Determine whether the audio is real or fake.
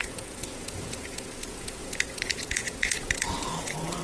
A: fake